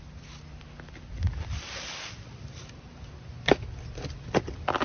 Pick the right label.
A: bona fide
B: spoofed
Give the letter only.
A